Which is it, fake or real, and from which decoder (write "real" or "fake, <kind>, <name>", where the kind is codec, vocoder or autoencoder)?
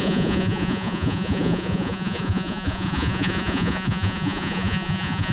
fake, vocoder, Vocos